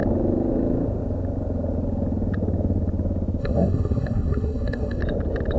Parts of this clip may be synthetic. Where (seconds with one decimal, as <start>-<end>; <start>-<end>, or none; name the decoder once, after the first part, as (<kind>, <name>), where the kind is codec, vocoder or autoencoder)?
3.4-5.0 (codec, SNAC)